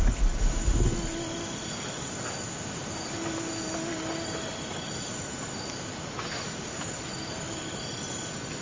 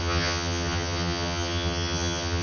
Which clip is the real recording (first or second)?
first